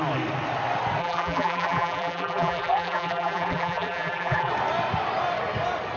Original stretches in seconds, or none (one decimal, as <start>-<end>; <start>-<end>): 0.0-1.0; 4.5-6.0